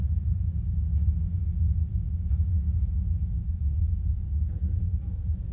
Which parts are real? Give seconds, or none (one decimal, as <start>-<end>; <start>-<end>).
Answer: 0.0-3.3